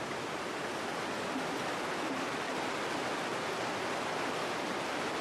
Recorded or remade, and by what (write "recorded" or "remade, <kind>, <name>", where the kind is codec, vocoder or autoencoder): recorded